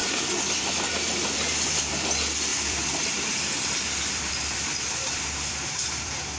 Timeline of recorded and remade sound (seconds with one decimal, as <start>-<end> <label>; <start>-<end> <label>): 0.0-1.9 remade; 1.9-2.5 recorded; 2.5-6.4 remade